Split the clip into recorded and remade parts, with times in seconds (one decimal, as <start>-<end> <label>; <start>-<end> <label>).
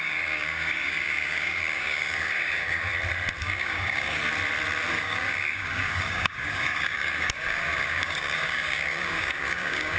0.0-2.9 remade; 2.9-3.4 recorded; 3.4-4.2 remade; 4.2-4.9 recorded; 4.9-10.0 remade